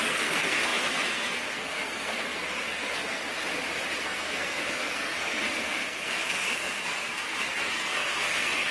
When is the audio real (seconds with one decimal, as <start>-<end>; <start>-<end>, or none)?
3.2-4.0